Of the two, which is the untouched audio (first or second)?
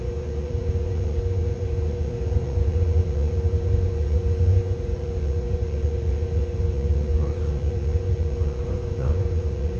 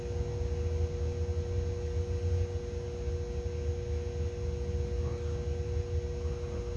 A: second